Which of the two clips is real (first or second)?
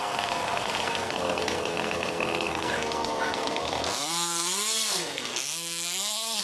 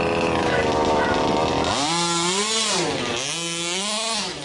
second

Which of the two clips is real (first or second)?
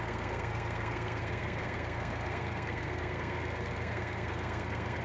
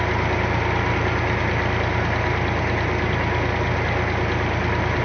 second